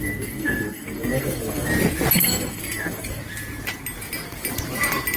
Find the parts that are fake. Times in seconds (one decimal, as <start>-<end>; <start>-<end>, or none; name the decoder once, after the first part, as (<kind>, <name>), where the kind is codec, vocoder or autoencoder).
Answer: 0.0-1.7 (codec, SNAC); 2.2-3.2